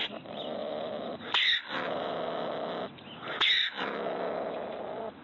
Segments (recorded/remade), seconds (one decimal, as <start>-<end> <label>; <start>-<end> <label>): 0.0-5.2 recorded